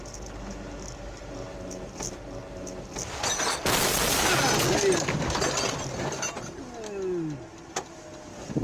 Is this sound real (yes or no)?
yes